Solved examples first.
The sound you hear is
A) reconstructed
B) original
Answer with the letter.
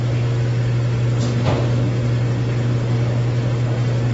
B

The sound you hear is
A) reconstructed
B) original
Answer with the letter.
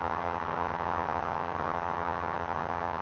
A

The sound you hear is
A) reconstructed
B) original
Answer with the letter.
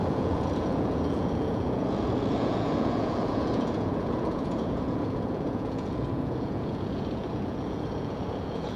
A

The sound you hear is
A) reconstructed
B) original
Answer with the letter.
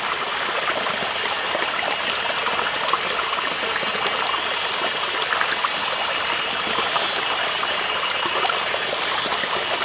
B